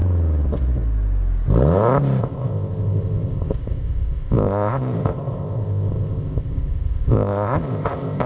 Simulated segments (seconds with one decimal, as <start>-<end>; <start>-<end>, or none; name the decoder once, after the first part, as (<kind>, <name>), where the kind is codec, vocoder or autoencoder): 2.2-8.3 (codec, ZipCodec)